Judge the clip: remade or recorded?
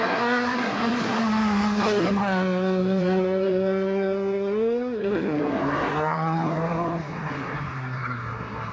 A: remade